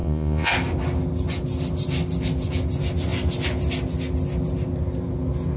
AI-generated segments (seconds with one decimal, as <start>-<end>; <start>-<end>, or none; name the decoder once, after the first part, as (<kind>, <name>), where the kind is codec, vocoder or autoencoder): 0.0-0.5 (vocoder, Vocos)